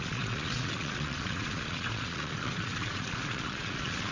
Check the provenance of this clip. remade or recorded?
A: remade